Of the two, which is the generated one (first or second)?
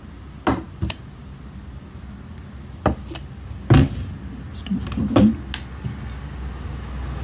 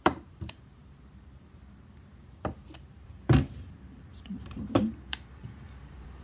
second